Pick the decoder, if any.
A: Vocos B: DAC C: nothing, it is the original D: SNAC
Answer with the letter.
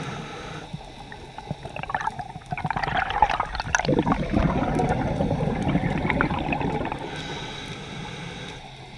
C